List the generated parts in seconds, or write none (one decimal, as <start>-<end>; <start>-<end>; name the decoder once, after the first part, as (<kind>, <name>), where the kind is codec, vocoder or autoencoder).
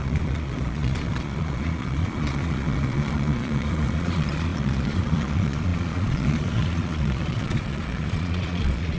0.0-9.0 (vocoder, Vocos)